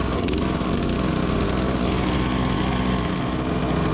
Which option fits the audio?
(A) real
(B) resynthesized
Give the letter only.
A